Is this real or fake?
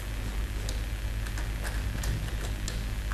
real